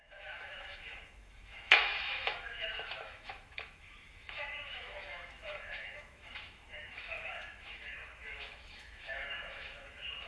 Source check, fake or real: fake